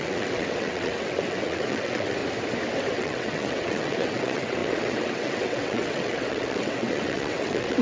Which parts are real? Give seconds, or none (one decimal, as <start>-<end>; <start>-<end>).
2.2-2.9